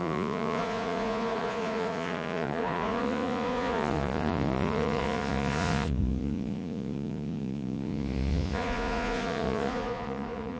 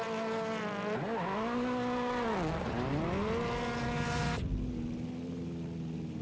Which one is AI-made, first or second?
first